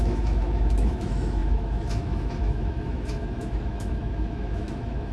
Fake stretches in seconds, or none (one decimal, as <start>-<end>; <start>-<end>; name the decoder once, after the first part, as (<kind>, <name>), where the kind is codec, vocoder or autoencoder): 0.0-5.1 (autoencoder, DAC-VAE)